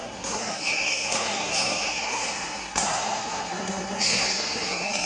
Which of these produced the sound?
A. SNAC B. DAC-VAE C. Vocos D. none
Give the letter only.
A